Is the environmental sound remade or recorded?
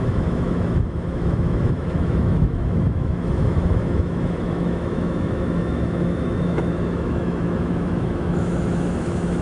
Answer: remade